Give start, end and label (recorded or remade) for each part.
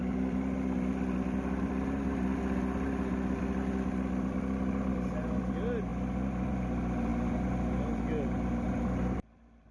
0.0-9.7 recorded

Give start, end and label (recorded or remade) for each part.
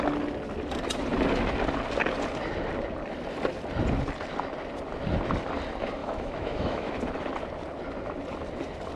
0.0-6.0 recorded; 6.0-6.9 remade; 6.9-9.0 recorded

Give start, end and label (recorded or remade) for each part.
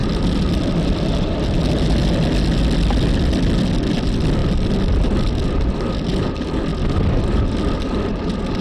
0.0-0.5 remade; 0.5-6.7 recorded; 6.7-8.1 remade; 8.1-8.6 recorded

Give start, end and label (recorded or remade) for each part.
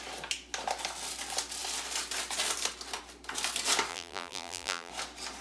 0.0-3.9 recorded; 3.9-4.9 remade; 4.9-5.4 recorded